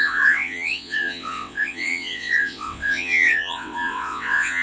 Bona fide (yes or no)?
no